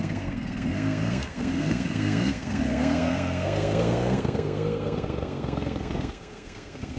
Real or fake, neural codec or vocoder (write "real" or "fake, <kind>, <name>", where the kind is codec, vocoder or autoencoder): fake, codec, SNAC